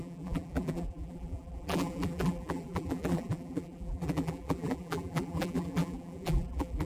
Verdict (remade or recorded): remade